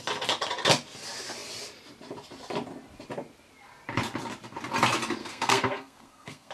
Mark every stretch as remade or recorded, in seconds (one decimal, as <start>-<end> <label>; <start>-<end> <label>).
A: 0.0-5.2 recorded; 5.2-6.5 remade